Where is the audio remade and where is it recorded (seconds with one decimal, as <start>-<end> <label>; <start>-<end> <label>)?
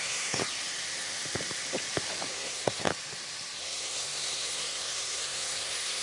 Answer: 0.0-0.4 remade; 0.4-2.3 recorded; 2.3-2.9 remade; 2.9-3.6 recorded; 3.6-6.0 remade